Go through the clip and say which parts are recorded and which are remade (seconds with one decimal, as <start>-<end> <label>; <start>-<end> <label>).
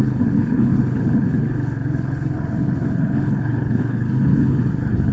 0.0-5.1 remade